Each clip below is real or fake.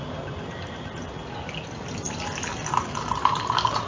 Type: real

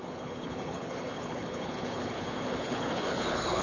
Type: fake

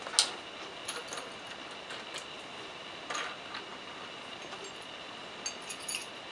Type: real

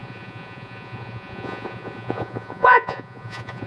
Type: fake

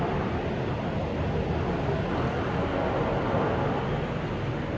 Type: real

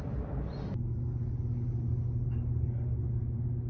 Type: real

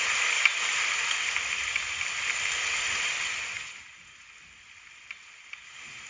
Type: real